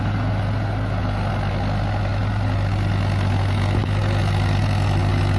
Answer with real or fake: real